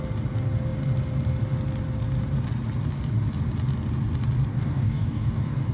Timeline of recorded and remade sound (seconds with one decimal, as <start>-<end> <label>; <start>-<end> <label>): 0.0-4.5 recorded; 4.5-5.7 remade